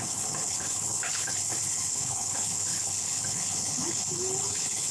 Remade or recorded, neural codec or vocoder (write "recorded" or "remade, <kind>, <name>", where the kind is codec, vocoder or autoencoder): remade, codec, HILCodec